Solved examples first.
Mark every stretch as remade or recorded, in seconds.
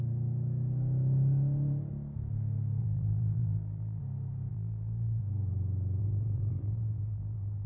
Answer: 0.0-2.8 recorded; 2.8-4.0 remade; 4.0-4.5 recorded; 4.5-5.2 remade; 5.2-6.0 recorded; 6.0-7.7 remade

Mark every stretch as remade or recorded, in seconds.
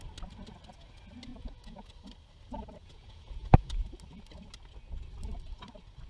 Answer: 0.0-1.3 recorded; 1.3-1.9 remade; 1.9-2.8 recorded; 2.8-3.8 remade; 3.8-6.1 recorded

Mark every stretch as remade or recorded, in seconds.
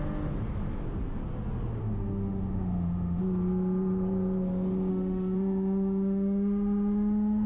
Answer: 0.0-1.8 recorded; 1.8-3.2 remade; 3.2-4.9 recorded; 4.9-7.5 remade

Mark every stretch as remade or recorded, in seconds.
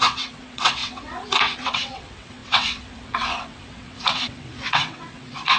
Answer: 0.0-5.6 remade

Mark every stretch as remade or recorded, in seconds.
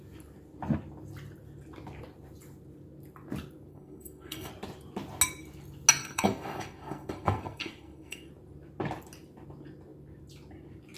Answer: 0.0-3.7 recorded; 3.7-4.5 remade; 4.5-6.0 recorded; 6.0-8.3 remade; 8.3-11.0 recorded